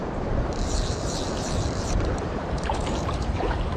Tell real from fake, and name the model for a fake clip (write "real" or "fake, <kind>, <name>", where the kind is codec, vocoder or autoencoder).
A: fake, vocoder, BigVGAN v2